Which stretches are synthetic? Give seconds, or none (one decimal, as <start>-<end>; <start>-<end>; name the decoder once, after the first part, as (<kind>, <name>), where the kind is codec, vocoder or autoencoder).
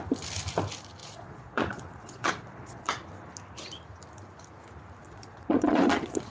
1.0-2.9 (vocoder, Vocos); 5.0-6.3